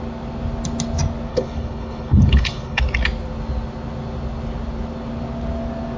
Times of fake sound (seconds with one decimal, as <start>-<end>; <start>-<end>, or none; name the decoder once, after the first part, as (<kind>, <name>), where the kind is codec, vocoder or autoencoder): 1.3-2.8 (codec, HILCodec)

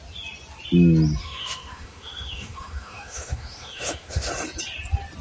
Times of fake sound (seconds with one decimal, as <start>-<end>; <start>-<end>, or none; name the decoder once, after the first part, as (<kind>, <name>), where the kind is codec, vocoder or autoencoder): 1.2-4.3 (autoencoder, DAC-VAE)

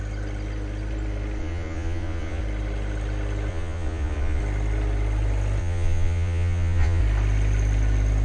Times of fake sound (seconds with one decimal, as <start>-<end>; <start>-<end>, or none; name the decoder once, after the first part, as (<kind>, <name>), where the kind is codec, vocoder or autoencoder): 1.4-2.4 (vocoder, Vocos); 3.5-4.4; 5.6-7.0